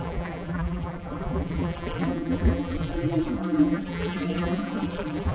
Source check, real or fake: fake